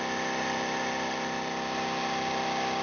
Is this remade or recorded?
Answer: recorded